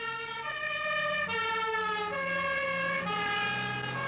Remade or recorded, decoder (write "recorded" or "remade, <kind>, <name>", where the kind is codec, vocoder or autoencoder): recorded